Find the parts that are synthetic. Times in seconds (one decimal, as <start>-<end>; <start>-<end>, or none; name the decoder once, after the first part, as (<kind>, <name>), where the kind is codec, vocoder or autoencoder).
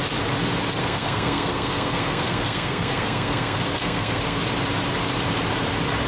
0.8-4.4 (codec, SNAC)